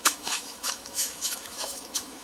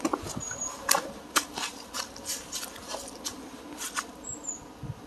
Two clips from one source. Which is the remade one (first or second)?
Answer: first